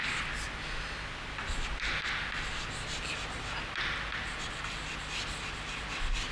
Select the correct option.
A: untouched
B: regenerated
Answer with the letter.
A